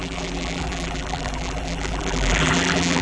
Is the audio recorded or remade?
remade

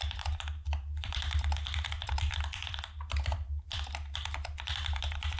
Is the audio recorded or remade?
recorded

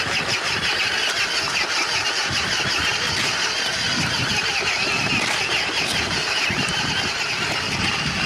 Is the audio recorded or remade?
recorded